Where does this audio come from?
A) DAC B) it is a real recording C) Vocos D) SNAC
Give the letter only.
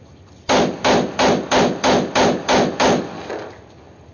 B